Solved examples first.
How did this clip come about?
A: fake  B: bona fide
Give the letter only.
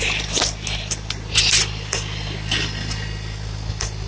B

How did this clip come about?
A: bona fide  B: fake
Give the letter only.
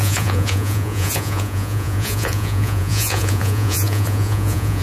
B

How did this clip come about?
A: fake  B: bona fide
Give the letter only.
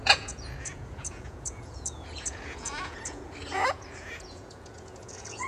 A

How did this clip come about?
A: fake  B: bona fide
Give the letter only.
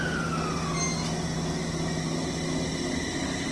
B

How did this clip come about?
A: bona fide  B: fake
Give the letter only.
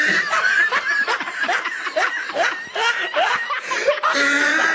A